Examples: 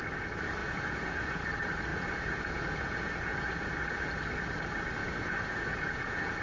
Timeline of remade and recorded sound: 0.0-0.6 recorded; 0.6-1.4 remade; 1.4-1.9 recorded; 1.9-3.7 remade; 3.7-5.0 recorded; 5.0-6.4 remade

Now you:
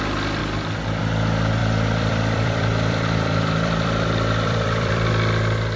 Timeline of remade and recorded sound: 0.0-0.4 recorded; 0.4-1.0 remade; 1.0-1.6 recorded; 1.6-5.1 remade; 5.1-5.8 recorded

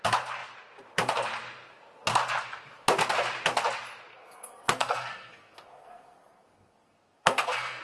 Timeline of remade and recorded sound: 0.0-4.1 recorded; 4.1-7.8 remade

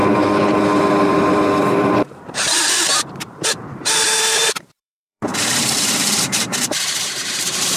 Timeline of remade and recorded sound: 0.0-7.8 remade

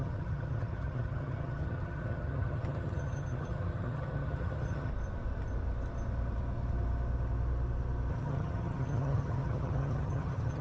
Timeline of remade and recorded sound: 0.0-4.9 remade; 4.9-8.1 recorded; 8.1-10.6 remade

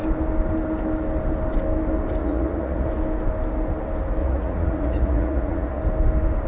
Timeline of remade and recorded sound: 0.0-2.2 recorded; 2.2-2.9 remade; 2.9-4.2 recorded; 4.2-5.8 remade; 5.8-6.5 recorded

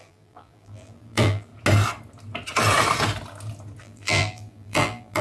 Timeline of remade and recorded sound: 0.0-1.5 remade; 1.5-3.8 recorded; 3.8-5.2 remade